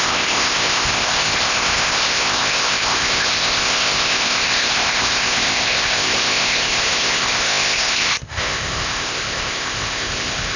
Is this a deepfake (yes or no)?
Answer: yes